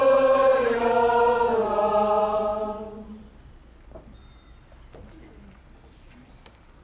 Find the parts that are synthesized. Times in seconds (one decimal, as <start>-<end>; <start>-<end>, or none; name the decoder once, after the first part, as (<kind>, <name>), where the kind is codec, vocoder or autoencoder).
0.5-1.2 (vocoder, BigVGAN v2)

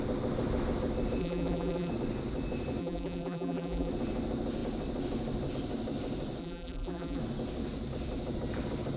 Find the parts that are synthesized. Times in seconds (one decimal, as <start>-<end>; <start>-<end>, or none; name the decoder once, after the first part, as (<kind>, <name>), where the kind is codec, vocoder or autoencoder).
1.2-1.9 (vocoder, BigVGAN v2); 2.8-3.9; 6.4-7.2

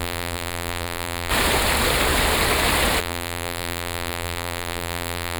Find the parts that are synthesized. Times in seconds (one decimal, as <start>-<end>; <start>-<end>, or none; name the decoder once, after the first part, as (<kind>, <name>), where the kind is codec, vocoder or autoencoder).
0.0-1.3 (vocoder, BigVGAN v2); 3.0-5.4